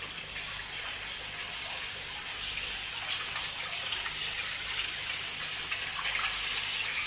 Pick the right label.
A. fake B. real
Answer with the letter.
B